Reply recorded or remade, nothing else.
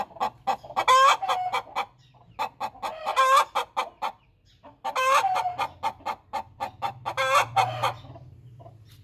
recorded